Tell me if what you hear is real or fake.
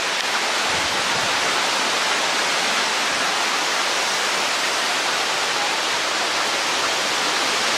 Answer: real